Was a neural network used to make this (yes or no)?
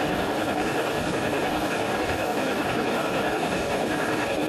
yes